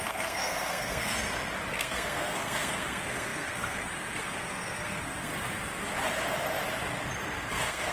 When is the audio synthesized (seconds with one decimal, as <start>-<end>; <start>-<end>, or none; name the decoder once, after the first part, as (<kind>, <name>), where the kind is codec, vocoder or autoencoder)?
0.0-1.1 (codec, SNAC); 1.7-5.3; 7.5-7.9